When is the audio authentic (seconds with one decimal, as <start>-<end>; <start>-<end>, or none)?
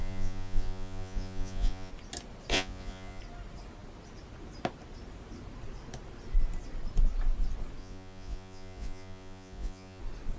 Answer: 1.9-2.5; 3.2-7.8; 10.0-10.4